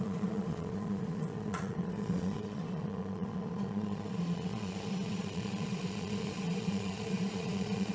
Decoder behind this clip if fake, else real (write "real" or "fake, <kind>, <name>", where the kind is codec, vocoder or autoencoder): fake, vocoder, Vocos